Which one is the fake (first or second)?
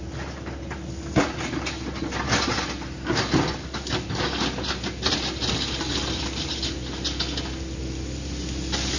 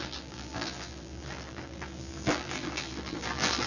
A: second